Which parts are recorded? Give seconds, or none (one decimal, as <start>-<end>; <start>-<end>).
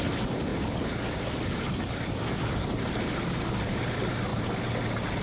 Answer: 0.5-3.6; 4.3-5.2